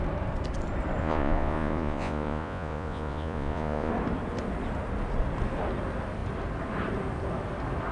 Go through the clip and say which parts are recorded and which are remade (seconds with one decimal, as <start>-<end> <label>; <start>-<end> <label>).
0.0-1.0 recorded; 1.0-3.9 remade; 3.9-7.9 recorded